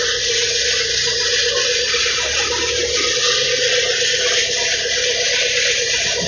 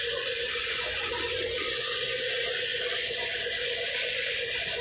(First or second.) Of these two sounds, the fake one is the second